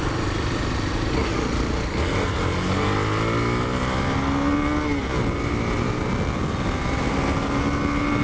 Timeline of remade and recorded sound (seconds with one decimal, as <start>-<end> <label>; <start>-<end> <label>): 0.0-8.2 recorded